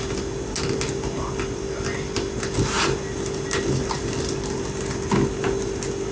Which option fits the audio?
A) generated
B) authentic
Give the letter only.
B